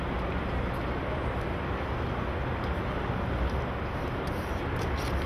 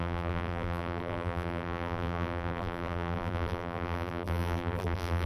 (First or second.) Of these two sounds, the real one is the first